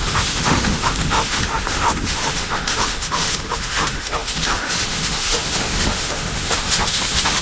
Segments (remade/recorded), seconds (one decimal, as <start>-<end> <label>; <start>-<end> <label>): 0.0-7.4 remade